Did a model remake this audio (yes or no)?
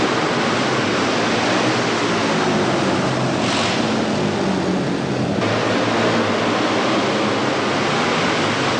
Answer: no